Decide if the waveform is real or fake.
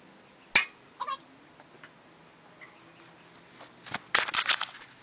real